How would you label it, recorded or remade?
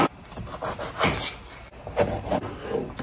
recorded